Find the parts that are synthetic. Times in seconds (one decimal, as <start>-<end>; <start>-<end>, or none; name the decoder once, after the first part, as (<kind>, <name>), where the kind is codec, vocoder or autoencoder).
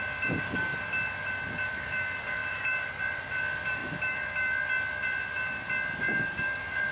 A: 0.0-0.7 (vocoder, BigVGAN v2); 1.3-6.9